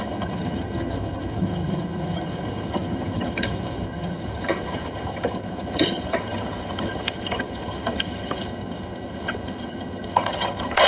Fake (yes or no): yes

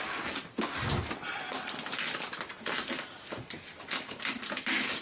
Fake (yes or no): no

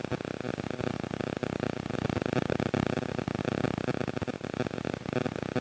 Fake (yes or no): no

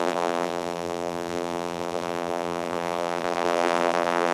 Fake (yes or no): yes